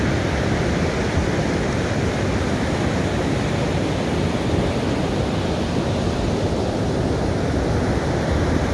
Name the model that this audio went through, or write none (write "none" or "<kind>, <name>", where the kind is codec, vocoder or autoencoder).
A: vocoder, BigVGAN v2